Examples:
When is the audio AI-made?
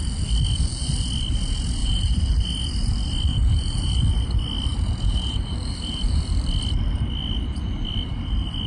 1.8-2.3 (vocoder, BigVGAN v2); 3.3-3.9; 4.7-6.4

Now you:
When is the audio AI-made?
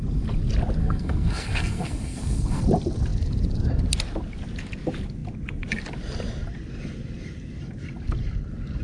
0.8-2.6 (codec, SNAC)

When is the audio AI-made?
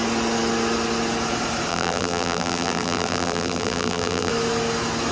1.7-4.3 (vocoder, BigVGAN v2)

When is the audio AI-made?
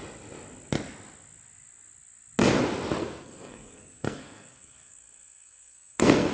3.0-6.3 (codec, SNAC)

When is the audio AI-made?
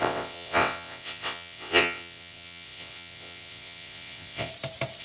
0.0-4.5 (vocoder, WaveNeXt)